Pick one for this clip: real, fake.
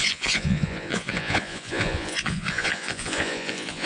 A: fake